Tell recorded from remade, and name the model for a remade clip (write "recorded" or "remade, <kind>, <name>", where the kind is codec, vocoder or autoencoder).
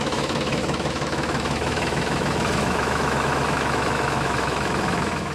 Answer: remade, autoencoder, DAC-VAE